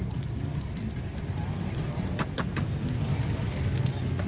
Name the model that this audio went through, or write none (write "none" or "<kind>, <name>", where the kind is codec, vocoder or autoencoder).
none